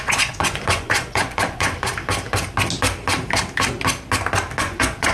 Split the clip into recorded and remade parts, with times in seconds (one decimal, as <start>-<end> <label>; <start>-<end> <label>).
0.0-1.9 remade; 1.9-4.6 recorded; 4.6-5.1 remade